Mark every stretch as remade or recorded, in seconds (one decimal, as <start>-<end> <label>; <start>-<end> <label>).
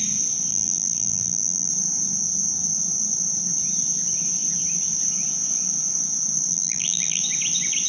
0.0-0.5 recorded; 0.5-1.7 remade; 1.7-6.5 recorded; 6.5-7.2 remade; 7.2-7.9 recorded